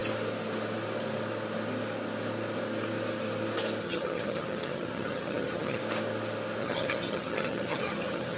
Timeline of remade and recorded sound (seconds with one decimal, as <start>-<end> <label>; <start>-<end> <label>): 0.0-3.8 recorded; 3.8-5.8 remade; 5.8-6.6 recorded; 6.6-8.4 remade